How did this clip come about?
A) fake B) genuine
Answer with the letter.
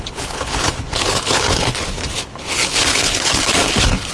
A